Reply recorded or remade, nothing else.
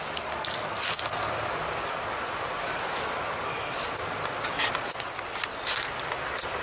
recorded